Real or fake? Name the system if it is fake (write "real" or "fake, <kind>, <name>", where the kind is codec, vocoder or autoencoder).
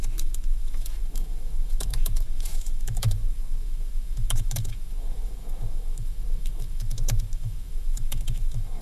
fake, autoencoder, DAC-VAE